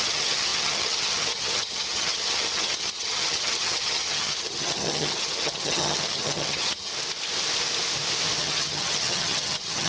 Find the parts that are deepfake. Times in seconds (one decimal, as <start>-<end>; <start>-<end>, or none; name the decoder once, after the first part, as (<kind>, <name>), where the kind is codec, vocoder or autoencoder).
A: 0.0-6.9 (vocoder, HiFi-GAN); 8.4-9.9